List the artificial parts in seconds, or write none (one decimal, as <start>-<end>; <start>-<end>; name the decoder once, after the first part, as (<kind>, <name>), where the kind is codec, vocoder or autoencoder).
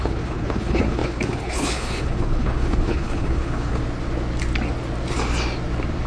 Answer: 0.0-3.8 (codec, HILCodec)